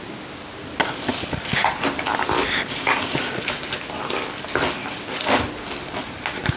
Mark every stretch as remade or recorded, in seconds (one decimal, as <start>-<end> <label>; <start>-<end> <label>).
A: 0.0-6.6 recorded